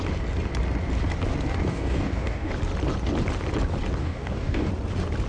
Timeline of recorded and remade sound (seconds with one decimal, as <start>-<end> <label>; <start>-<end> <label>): 0.0-1.7 recorded; 1.7-2.5 remade; 2.5-4.0 recorded; 4.0-4.7 remade; 4.7-5.3 recorded